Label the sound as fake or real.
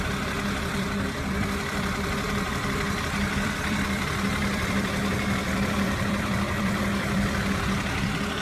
fake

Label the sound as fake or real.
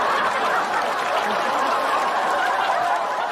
real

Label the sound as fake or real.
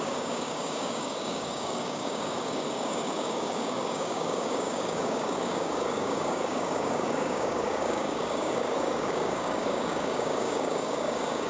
fake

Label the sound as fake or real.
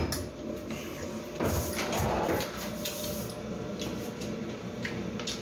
real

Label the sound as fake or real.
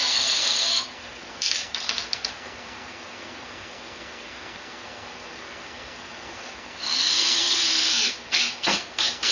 fake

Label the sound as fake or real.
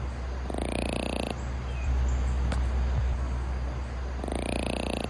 real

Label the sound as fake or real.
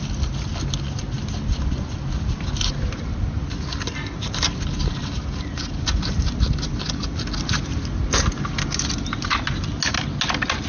real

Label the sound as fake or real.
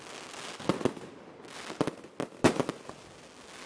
real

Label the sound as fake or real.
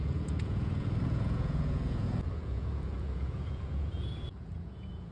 fake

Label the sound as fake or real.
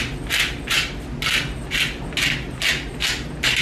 real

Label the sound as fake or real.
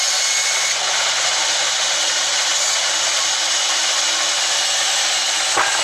real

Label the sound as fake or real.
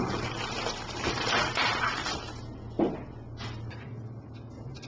real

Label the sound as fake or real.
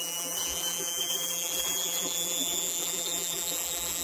fake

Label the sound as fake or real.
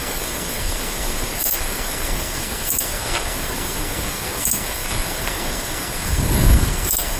fake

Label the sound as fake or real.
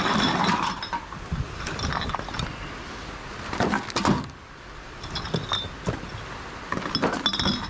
real